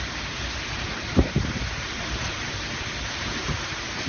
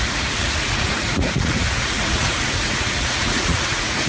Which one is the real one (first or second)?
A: first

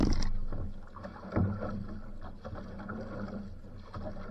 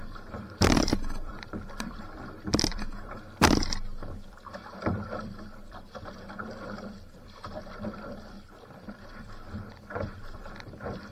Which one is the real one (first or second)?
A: first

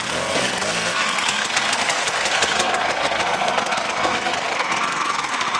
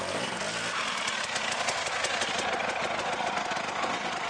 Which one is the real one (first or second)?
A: second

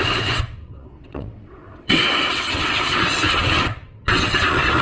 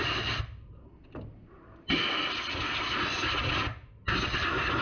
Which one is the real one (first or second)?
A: second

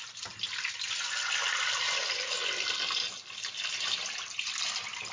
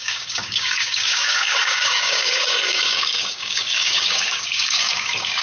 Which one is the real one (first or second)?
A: first